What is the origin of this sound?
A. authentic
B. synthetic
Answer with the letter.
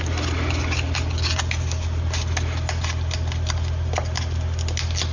A